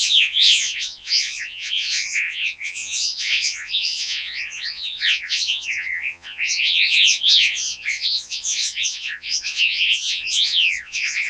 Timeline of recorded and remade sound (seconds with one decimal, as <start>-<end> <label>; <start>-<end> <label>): 0.0-11.3 remade